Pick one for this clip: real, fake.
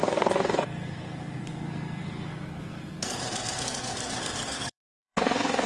fake